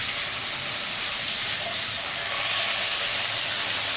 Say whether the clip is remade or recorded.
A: recorded